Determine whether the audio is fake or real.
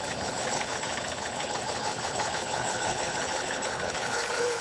fake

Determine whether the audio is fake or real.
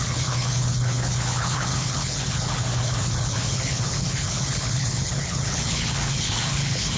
fake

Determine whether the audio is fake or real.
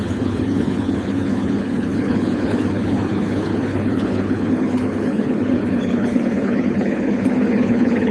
fake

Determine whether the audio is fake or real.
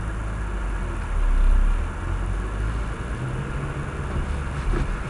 real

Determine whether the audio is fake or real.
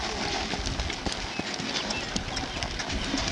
real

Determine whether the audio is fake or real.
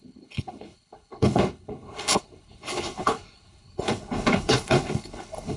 fake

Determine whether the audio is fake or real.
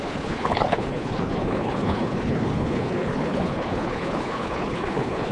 fake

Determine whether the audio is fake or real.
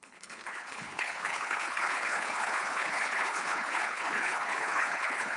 fake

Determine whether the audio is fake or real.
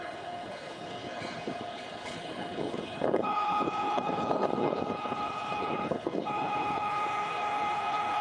fake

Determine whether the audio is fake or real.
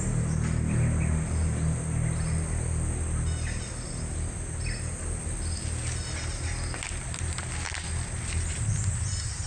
real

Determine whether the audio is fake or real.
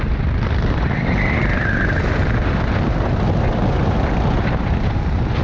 real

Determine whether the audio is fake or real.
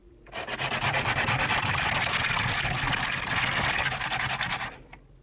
real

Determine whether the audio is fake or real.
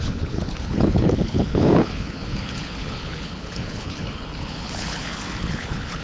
fake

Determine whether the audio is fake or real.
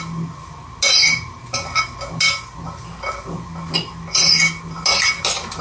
real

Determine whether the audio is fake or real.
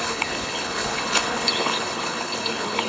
fake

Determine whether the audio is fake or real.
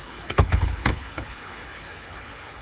fake